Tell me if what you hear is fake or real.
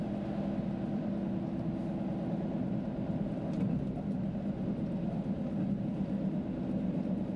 real